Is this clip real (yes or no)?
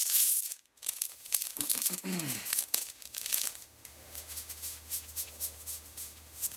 no